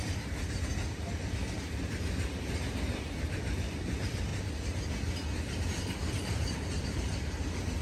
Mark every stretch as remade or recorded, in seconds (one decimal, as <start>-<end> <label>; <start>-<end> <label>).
0.0-0.7 remade; 0.7-2.9 recorded; 2.9-4.3 remade; 4.3-6.1 recorded; 6.1-7.8 remade